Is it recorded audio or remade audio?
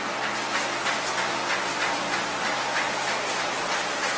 recorded